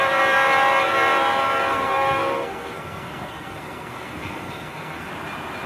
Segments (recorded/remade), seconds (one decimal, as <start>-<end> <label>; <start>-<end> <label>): 0.0-1.7 recorded; 1.7-5.1 remade; 5.1-5.7 recorded